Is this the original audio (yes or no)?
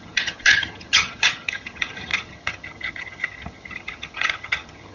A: no